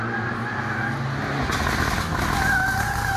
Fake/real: real